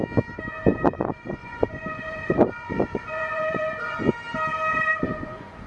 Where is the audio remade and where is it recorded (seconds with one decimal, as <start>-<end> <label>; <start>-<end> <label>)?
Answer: 0.0-0.7 recorded; 0.7-4.1 remade; 4.1-4.7 recorded; 4.7-5.7 remade

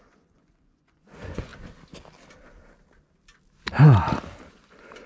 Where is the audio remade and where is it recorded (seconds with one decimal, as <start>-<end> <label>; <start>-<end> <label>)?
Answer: 0.0-1.5 remade; 1.5-4.5 recorded; 4.5-5.1 remade

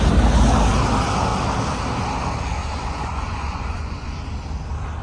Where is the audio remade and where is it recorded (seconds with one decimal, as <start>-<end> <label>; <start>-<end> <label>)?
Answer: 0.0-2.6 recorded; 2.6-4.2 remade; 4.2-5.0 recorded

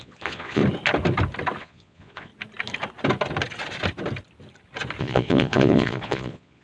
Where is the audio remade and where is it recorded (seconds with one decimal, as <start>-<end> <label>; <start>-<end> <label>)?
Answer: 0.0-0.6 remade; 0.6-1.6 recorded; 1.6-2.3 remade; 2.3-5.0 recorded; 5.0-6.6 remade

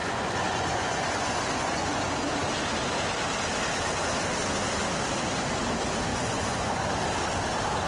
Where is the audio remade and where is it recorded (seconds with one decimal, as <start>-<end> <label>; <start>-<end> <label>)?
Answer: 0.0-2.0 remade; 2.0-6.1 recorded; 6.1-6.9 remade; 6.9-7.9 recorded